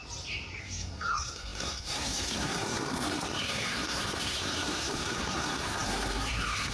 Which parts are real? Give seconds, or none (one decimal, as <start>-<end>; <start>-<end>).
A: 0.0-0.6